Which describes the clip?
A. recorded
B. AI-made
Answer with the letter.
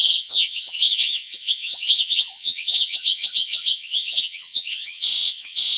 B